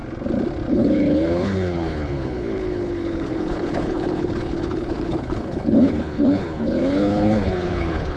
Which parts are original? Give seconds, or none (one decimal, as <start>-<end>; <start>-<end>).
0.0-0.7